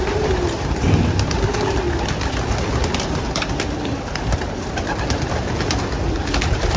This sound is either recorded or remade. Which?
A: recorded